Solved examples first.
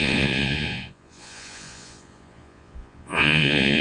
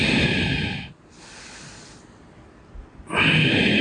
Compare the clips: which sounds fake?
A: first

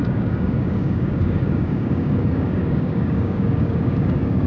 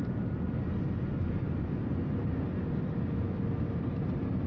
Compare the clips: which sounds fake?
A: first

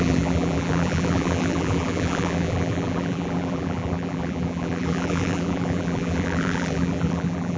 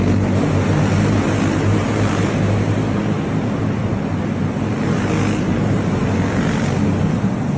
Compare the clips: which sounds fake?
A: first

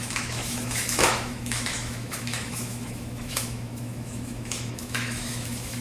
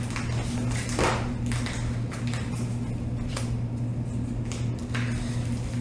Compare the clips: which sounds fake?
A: first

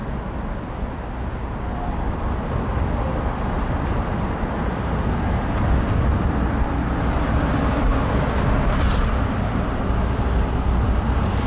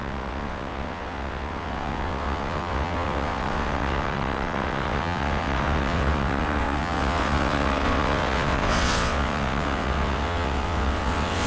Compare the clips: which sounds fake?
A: second